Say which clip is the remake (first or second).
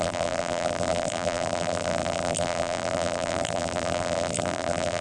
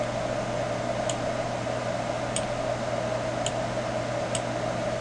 first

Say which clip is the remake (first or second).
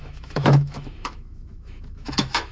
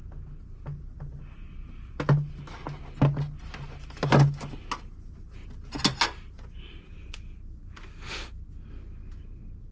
first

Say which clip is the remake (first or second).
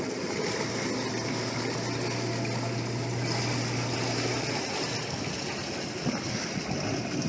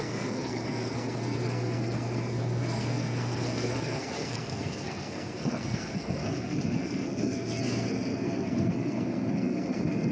second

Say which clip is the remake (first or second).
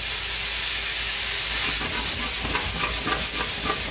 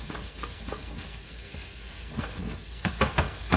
second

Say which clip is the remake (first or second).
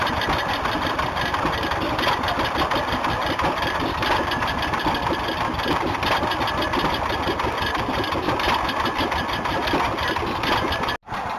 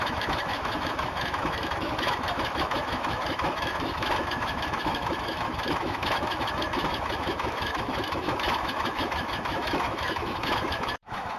second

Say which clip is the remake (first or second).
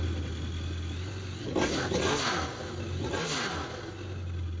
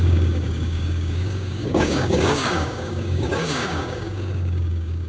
second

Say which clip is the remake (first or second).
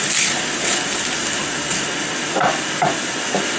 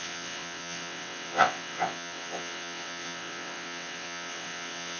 second